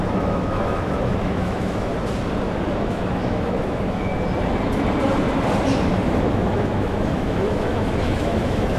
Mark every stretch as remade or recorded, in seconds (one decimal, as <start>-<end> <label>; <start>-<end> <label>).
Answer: 0.0-1.9 remade; 1.9-2.7 recorded; 2.7-4.1 remade; 4.1-6.3 recorded; 6.3-8.8 remade